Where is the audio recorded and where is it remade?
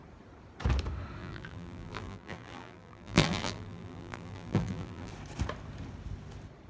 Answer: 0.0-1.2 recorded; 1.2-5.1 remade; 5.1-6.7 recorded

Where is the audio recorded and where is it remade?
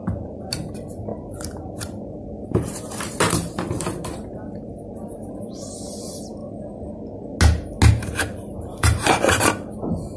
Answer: 0.0-6.4 remade; 6.4-7.9 recorded; 7.9-10.2 remade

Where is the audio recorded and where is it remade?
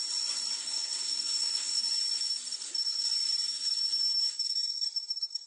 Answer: 0.0-0.6 recorded; 0.6-1.8 remade; 1.8-5.5 recorded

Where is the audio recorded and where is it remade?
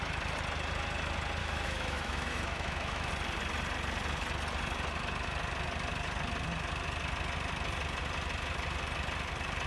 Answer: 0.0-1.4 recorded; 1.4-3.1 remade; 3.1-9.7 recorded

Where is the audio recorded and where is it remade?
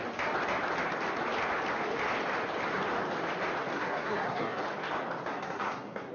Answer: 0.0-3.7 recorded; 3.7-4.6 remade; 4.6-5.3 recorded; 5.3-6.1 remade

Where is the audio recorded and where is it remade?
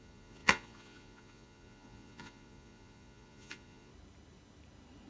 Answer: 0.0-3.9 remade; 3.9-5.1 recorded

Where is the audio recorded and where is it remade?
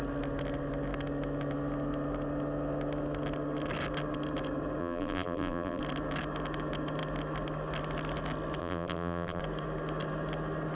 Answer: 0.0-4.8 recorded; 4.8-5.8 remade; 5.8-8.6 recorded; 8.6-9.4 remade; 9.4-10.7 recorded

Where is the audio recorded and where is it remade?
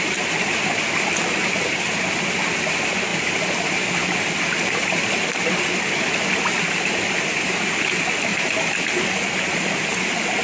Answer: 0.0-10.4 recorded